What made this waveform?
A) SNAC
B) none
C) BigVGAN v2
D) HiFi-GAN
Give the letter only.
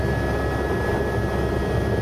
B